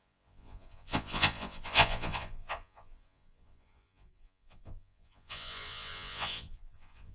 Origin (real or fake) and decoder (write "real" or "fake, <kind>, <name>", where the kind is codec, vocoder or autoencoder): fake, vocoder, Vocos